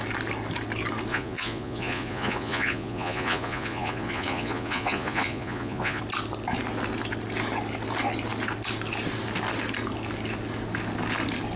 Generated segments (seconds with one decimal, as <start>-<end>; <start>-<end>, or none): 1.1-6.0

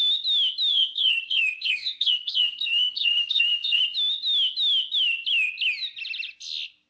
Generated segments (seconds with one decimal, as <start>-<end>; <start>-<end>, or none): 0.7-3.8